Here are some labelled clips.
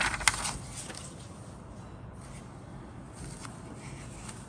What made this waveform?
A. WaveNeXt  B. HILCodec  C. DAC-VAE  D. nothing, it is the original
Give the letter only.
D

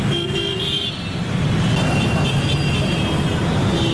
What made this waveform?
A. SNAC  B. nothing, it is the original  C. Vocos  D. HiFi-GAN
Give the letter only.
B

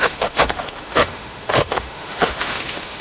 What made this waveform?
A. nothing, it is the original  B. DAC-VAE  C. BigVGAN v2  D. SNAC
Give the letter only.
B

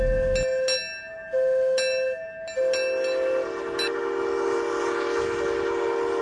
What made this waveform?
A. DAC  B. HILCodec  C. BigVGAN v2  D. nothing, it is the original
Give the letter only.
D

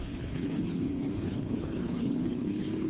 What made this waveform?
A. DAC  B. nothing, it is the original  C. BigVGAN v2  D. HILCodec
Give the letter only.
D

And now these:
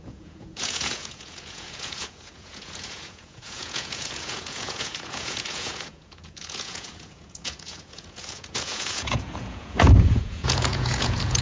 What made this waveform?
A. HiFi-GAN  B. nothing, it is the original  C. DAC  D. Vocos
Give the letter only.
D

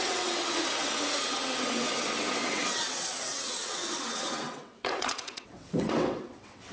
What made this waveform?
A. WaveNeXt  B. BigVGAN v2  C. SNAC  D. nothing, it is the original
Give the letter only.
A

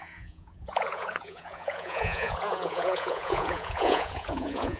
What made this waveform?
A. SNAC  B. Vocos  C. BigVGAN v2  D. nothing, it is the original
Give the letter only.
B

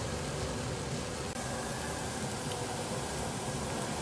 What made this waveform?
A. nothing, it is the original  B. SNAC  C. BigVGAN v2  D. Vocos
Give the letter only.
A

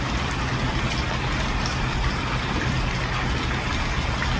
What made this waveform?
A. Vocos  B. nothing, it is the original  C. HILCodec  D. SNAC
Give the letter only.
B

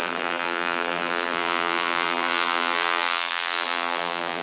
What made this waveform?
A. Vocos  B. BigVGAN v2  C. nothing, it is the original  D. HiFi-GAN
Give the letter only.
B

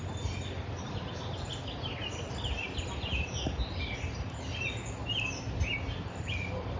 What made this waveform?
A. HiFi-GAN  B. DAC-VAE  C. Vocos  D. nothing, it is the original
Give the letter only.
D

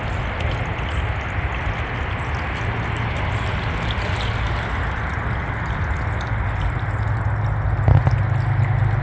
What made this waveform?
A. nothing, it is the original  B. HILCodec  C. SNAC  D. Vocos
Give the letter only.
A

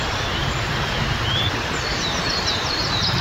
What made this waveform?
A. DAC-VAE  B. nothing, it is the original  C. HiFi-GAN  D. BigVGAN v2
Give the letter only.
B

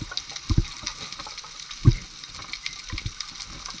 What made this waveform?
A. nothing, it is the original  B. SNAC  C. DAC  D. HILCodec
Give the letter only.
A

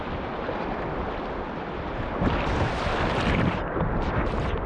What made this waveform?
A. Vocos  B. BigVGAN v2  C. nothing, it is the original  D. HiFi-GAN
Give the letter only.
C